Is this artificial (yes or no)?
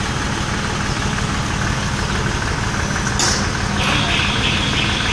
no